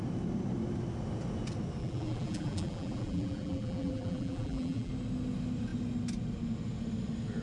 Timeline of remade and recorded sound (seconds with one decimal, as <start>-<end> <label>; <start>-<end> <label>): 0.0-1.8 recorded; 1.8-4.9 remade; 4.9-7.4 recorded